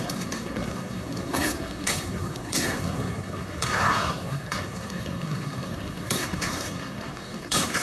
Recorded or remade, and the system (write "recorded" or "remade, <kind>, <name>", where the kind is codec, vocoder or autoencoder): remade, codec, SNAC